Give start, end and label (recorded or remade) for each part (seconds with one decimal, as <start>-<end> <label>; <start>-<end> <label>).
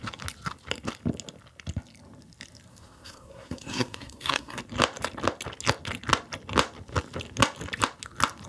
0.0-2.7 recorded; 2.7-4.6 remade; 4.6-8.5 recorded